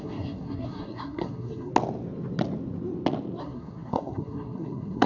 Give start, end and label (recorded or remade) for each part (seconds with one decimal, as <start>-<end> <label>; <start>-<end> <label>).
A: 0.0-1.7 remade; 1.7-3.4 recorded; 3.4-5.1 remade